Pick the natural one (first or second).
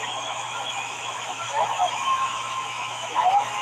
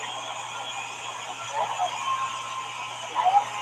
second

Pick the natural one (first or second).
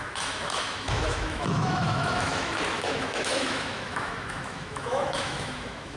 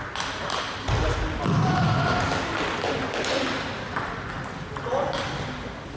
second